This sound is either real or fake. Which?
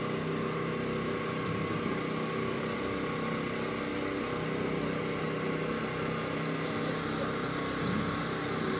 real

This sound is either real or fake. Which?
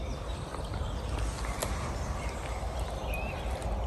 real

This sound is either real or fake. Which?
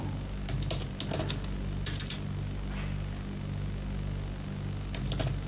real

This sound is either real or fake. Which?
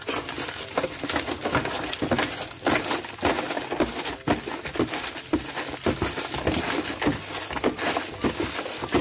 real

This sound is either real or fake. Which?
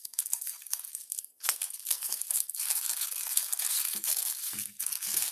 fake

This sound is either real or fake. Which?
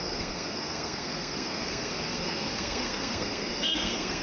fake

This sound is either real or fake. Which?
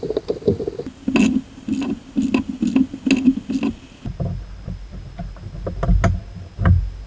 real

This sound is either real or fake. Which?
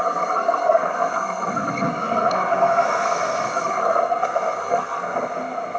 fake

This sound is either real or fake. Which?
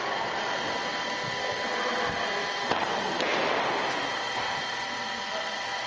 real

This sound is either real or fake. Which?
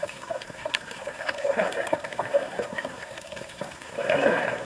fake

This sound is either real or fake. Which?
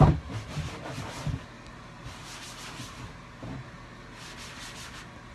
real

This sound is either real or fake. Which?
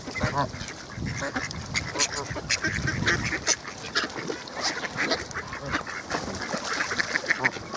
real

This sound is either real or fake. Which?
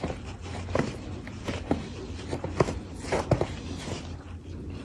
real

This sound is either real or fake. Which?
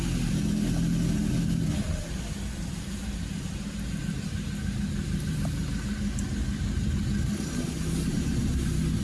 real